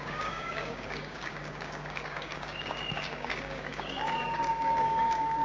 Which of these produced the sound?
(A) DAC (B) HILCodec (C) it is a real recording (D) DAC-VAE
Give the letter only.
A